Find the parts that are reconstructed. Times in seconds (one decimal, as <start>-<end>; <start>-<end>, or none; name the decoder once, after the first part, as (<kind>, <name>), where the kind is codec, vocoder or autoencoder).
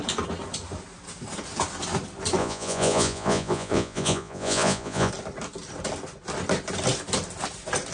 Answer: 2.4-5.1 (vocoder, Vocos)